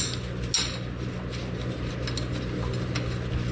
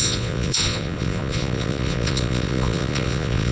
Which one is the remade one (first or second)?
second